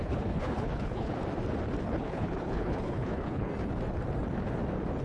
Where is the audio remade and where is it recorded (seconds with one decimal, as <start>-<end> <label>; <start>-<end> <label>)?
0.0-1.2 remade; 1.2-1.8 recorded; 1.8-3.5 remade; 3.5-5.0 recorded